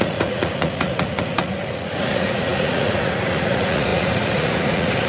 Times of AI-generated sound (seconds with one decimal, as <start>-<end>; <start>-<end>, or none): 0.0-5.1